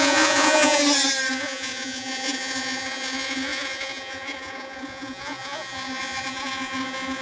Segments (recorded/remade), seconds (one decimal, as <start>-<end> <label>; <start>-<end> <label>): 0.0-0.8 remade; 0.8-1.3 recorded; 1.3-7.2 remade